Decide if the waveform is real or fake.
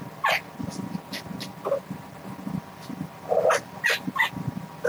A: real